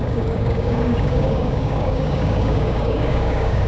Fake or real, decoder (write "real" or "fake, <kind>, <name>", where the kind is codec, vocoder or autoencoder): fake, codec, DAC